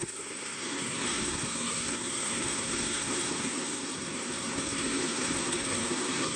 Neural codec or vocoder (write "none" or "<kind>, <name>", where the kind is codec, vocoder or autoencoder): codec, SNAC